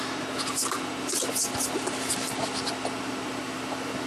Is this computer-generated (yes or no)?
no